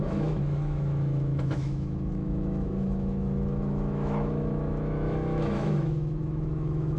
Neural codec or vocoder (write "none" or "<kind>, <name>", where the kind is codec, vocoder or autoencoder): autoencoder, DAC-VAE